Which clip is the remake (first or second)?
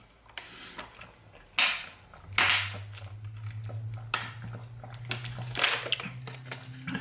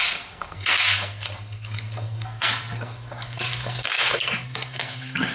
second